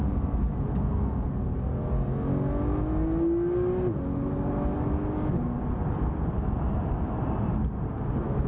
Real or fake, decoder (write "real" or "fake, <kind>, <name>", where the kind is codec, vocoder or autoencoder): real